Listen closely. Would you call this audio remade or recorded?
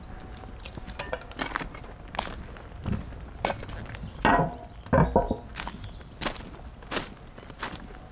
recorded